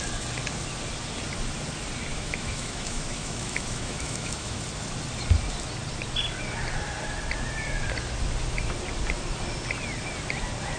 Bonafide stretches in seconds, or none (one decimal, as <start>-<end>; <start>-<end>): 0.0-2.1; 4.6-10.8